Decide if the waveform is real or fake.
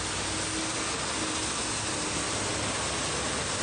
real